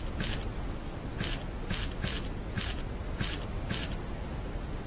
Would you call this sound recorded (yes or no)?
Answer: yes